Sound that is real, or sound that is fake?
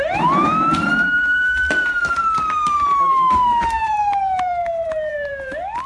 fake